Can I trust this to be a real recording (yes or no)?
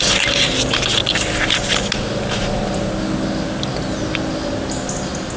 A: yes